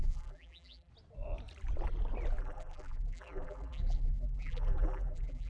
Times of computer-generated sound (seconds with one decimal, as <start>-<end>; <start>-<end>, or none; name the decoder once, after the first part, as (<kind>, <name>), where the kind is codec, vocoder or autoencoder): 0.0-0.9 (vocoder, BigVGAN v2); 2.4-5.5